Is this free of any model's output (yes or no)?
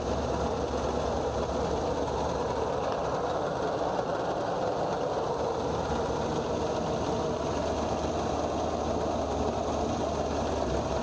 yes